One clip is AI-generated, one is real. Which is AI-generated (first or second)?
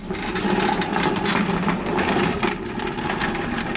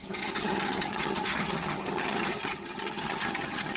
second